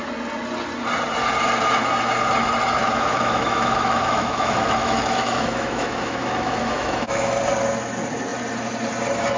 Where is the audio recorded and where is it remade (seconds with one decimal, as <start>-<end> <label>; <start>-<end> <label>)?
0.0-2.8 recorded; 2.8-7.4 remade; 7.4-9.4 recorded

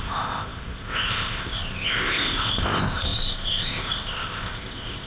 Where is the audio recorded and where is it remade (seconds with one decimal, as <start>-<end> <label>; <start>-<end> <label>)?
0.0-5.1 remade

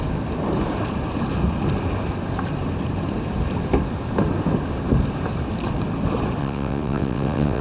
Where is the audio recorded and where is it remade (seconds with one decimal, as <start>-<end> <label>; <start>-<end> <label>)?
0.0-6.4 recorded; 6.4-7.6 remade

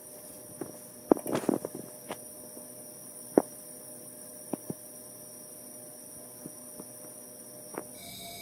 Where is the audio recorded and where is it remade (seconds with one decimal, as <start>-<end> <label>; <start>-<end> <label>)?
0.0-0.5 remade; 0.5-3.0 recorded; 3.0-5.0 remade; 5.0-8.4 recorded

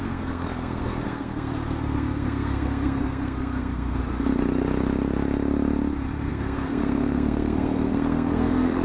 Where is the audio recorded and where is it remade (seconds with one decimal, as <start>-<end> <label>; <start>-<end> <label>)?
0.0-4.0 remade; 4.0-6.3 recorded; 6.3-8.8 remade

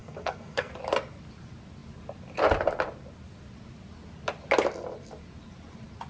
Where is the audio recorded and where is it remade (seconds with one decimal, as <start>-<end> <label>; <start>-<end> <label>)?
0.0-0.7 remade; 0.7-6.1 recorded

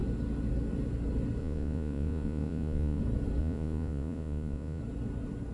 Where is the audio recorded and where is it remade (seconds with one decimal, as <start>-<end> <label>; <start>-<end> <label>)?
0.0-1.4 recorded; 1.4-3.0 remade; 3.0-3.4 recorded; 3.4-4.8 remade; 4.8-5.5 recorded